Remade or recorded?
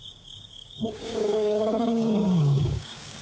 remade